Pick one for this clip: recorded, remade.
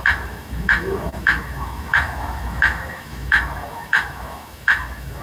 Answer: remade